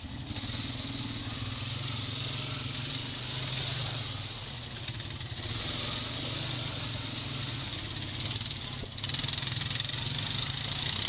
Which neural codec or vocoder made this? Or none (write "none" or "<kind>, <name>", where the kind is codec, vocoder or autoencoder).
none